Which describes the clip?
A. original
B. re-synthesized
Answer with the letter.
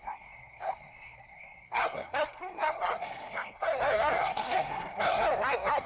B